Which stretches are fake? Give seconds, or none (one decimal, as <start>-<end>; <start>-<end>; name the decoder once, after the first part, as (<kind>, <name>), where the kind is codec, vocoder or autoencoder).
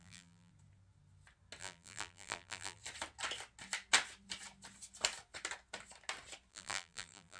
0.0-0.5 (vocoder, BigVGAN v2); 1.6-2.8; 6.5-7.4